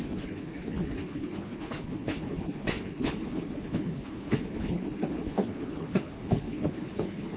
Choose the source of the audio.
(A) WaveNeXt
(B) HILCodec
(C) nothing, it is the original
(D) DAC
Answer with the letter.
B